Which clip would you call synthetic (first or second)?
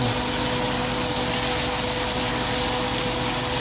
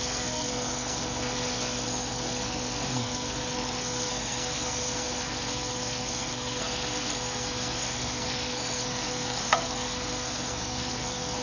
second